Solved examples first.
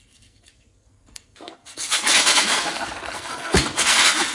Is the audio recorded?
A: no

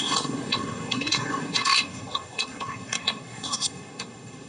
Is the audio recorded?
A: no